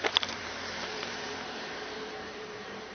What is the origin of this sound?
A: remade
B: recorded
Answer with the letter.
A